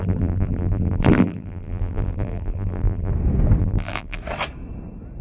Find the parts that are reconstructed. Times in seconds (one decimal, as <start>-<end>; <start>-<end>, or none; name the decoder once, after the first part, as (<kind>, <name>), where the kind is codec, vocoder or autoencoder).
0.0-3.1 (vocoder, BigVGAN v2); 3.6-4.2